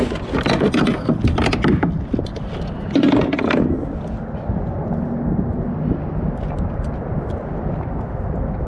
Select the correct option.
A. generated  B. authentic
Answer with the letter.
B